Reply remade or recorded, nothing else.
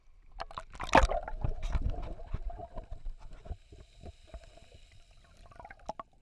recorded